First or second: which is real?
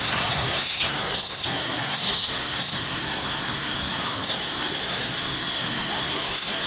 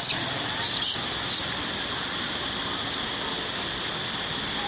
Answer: second